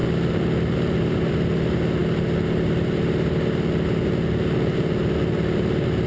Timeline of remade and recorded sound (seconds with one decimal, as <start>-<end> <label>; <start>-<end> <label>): 0.0-6.1 recorded